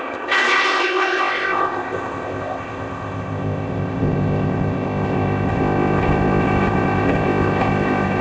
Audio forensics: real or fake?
fake